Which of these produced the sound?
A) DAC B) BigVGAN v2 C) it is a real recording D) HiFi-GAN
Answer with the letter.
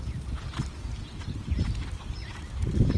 C